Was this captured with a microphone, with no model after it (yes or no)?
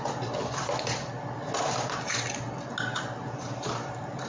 yes